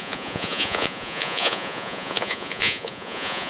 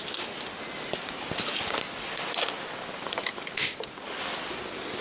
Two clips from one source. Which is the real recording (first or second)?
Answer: second